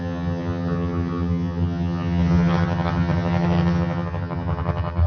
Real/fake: fake